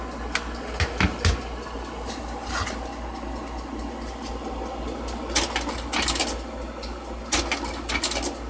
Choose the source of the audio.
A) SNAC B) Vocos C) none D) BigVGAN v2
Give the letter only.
C